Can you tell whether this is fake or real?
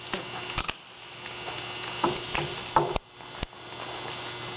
real